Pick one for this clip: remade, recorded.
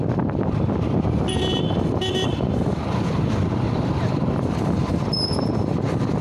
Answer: remade